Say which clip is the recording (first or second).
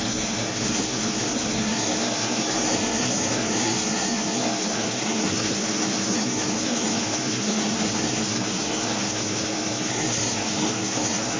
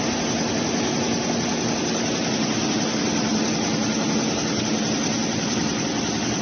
second